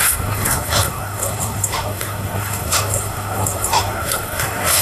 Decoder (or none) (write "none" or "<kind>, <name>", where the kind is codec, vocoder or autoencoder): codec, SNAC